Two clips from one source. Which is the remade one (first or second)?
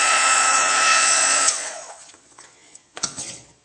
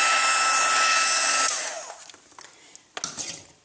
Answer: first